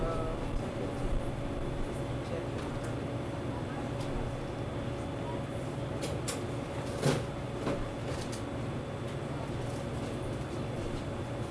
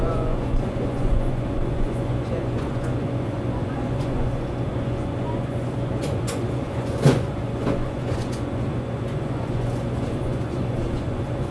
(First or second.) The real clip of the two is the first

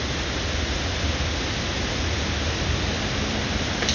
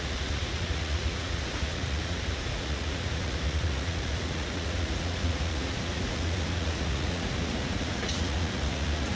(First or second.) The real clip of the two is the first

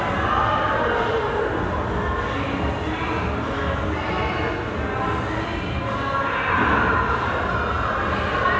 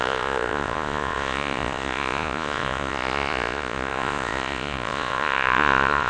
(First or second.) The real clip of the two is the first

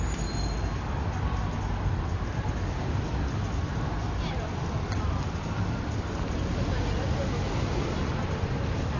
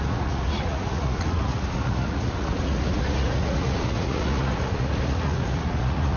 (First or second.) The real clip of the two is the first